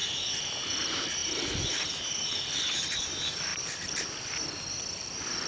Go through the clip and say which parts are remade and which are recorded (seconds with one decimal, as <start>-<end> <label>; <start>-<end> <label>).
0.0-1.2 recorded; 1.2-3.1 remade; 3.1-3.5 recorded; 3.5-4.2 remade; 4.2-5.5 recorded